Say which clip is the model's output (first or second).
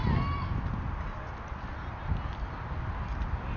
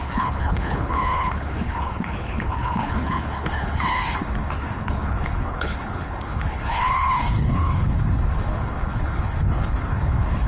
second